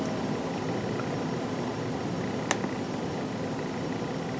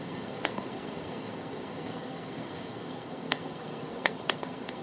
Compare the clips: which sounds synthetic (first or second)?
second